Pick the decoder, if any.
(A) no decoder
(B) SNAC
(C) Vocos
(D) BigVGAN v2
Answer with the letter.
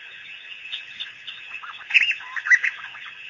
A